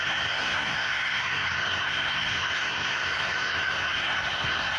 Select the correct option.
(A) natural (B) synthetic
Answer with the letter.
B